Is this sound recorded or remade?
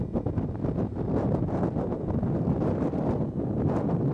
recorded